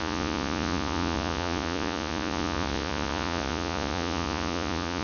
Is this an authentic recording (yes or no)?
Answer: no